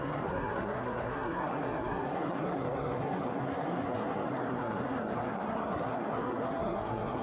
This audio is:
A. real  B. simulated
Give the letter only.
B